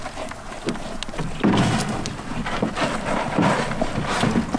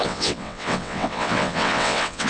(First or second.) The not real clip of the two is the second